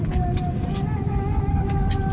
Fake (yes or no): no